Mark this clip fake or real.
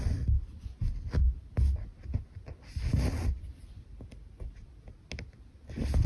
real